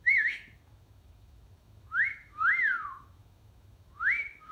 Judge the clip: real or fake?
fake